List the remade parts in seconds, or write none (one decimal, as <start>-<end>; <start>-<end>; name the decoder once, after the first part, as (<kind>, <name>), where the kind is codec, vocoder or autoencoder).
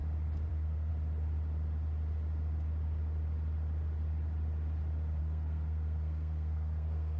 0.5-0.9 (codec, SNAC); 5.2-7.2